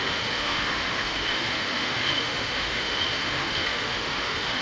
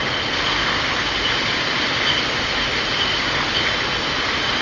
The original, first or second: second